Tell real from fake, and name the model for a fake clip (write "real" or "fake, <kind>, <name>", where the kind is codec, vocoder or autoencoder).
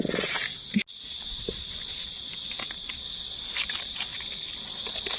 real